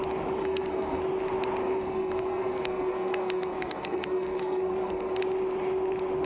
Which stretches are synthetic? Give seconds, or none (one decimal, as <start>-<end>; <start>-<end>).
0.4-1.0; 1.6-5.2